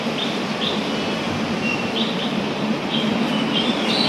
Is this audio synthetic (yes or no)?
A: no